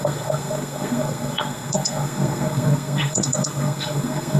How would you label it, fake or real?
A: fake